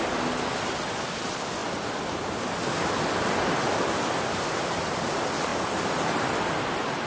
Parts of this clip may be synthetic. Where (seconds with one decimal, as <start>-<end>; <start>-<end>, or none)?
none